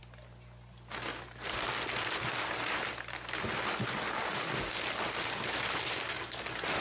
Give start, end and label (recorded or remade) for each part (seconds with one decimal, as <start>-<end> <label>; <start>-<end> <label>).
0.0-6.8 recorded